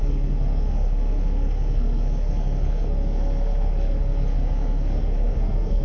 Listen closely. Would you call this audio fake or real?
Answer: fake